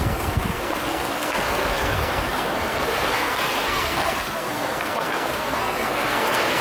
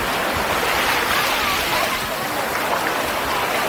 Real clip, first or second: second